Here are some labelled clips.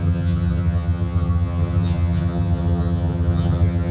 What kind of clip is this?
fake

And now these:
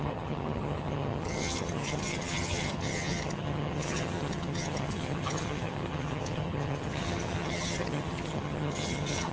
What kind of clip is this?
fake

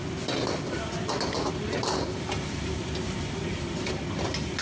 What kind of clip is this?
real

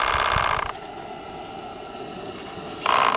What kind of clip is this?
real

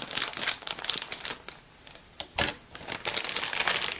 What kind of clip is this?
real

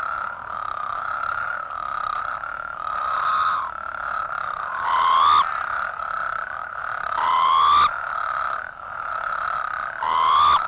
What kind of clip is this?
real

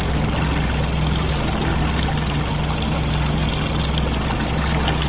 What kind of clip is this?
real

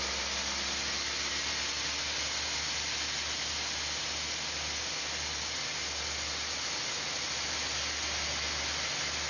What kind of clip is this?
real